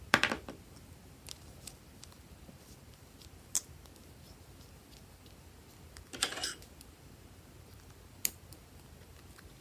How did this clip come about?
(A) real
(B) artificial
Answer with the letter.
A